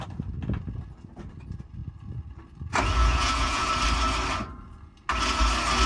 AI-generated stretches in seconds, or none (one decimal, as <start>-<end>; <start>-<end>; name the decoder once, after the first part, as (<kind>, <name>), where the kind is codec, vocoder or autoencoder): 3.0-3.7 (vocoder, Vocos)